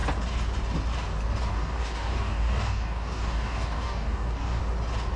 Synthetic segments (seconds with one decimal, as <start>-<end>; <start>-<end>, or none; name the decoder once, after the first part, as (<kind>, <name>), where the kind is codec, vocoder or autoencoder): 1.5-4.6 (codec, DAC)